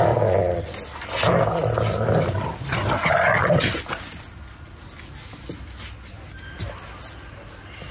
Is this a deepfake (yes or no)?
no